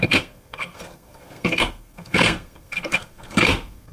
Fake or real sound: fake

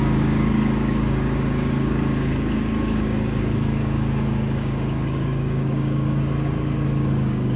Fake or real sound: fake